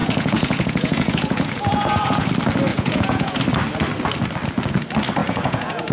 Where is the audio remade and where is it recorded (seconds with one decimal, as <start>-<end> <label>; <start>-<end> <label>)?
0.0-2.3 remade; 2.3-2.7 recorded; 2.7-3.4 remade; 3.4-5.2 recorded; 5.2-5.9 remade